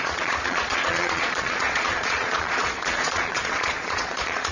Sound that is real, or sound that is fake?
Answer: fake